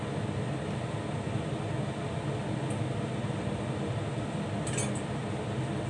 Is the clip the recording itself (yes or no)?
yes